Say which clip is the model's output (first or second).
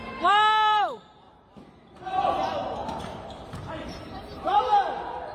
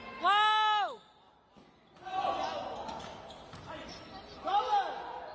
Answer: first